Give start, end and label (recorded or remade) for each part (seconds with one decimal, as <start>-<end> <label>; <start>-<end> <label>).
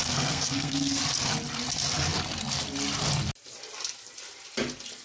0.0-1.0 remade; 1.0-5.0 recorded